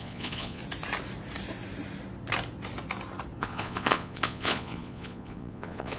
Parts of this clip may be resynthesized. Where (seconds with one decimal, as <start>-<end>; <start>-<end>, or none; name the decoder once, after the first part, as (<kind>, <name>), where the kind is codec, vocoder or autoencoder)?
0.0-0.6 (vocoder, Vocos); 3.4-6.0